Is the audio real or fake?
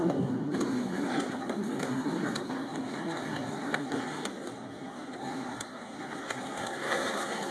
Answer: fake